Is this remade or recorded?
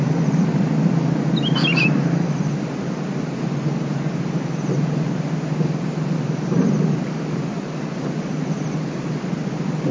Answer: recorded